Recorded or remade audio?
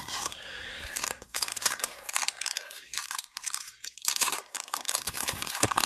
remade